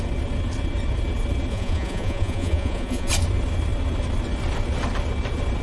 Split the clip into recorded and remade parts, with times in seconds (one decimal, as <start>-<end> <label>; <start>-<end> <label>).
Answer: 0.0-1.5 recorded; 1.5-3.1 remade; 3.1-5.6 recorded